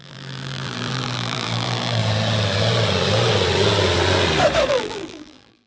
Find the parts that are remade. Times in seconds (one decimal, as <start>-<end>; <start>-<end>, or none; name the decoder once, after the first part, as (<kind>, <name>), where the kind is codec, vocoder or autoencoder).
0.0-2.0 (vocoder, BigVGAN v2); 4.7-5.7